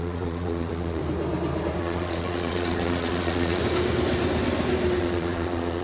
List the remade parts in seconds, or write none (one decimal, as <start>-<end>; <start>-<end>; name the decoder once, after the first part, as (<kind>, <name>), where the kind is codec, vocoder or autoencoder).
0.0-1.0 (vocoder, Vocos); 1.8-3.6; 5.0-5.8